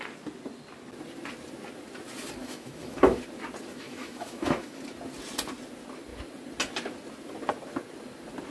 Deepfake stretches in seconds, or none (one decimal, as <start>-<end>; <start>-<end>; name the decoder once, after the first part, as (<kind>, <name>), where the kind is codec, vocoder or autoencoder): 2.4-3.2 (autoencoder, DAC-VAE); 3.7-4.8